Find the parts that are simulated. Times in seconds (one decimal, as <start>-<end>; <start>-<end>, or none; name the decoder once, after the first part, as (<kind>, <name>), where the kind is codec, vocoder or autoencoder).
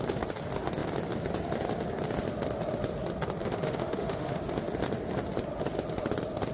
3.4-4.4 (autoencoder, DAC-VAE)